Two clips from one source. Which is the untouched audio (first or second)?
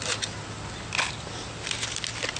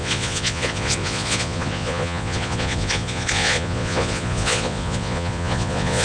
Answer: first